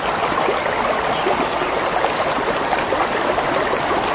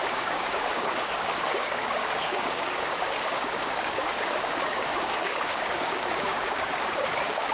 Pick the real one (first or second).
first